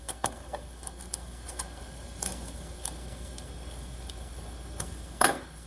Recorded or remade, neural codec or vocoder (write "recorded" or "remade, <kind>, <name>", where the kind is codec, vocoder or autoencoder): remade, codec, SNAC